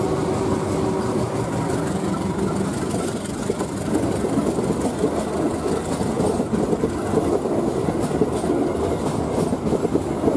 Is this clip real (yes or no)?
yes